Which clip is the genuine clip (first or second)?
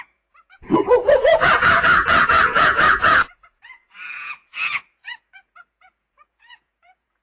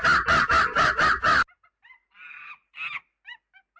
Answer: second